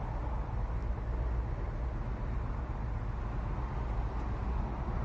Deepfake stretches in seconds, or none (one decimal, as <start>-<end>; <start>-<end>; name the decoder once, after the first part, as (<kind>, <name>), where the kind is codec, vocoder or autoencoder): none